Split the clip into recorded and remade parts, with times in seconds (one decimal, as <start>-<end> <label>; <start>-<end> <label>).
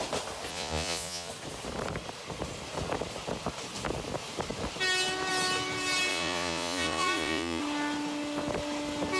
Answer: 0.0-0.5 recorded; 0.5-1.3 remade; 1.3-6.1 recorded; 6.1-7.6 remade; 7.6-9.2 recorded